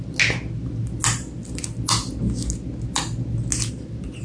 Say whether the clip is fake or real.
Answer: real